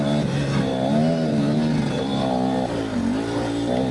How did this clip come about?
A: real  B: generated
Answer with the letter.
A